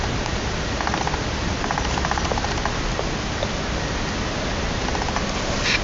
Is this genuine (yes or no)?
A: yes